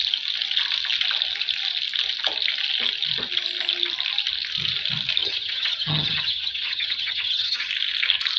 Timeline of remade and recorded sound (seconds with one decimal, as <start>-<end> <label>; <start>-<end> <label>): 0.0-5.2 recorded; 5.2-7.7 remade; 7.7-8.4 recorded

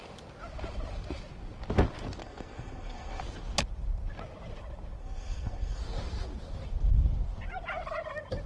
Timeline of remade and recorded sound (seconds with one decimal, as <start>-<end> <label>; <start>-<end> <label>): 0.0-2.2 recorded; 2.2-3.2 remade; 3.2-5.0 recorded; 5.0-5.8 remade; 5.8-8.5 recorded

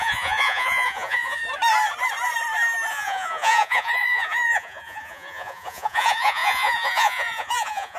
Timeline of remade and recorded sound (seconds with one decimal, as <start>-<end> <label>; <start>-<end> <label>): 0.0-1.4 remade; 1.4-2.9 recorded; 2.9-8.0 remade

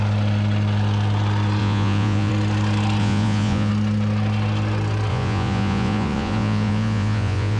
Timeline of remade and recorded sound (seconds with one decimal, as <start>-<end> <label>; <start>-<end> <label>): 0.0-1.6 recorded; 1.6-2.3 remade; 2.3-3.0 recorded; 3.0-3.7 remade; 3.7-5.1 recorded; 5.1-7.6 remade

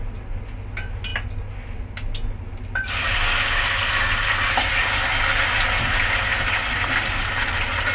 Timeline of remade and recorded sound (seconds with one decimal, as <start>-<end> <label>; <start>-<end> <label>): 0.0-7.9 recorded